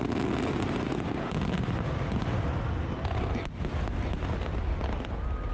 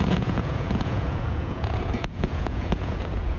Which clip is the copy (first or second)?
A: second